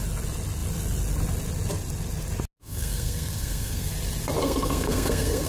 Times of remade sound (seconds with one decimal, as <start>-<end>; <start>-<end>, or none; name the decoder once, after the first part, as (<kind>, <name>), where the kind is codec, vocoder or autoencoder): 2.6-3.9 (codec, SNAC); 4.4-5.5